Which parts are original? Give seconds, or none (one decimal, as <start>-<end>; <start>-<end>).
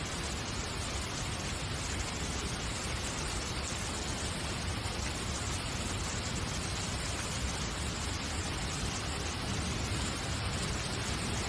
0.0-11.5